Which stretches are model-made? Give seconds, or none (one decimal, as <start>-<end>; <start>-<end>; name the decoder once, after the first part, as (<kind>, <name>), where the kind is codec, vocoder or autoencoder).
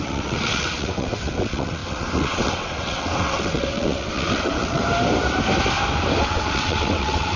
0.0-4.8 (vocoder, WaveNeXt); 6.2-7.4